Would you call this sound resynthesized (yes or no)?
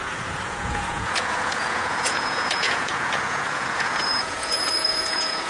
yes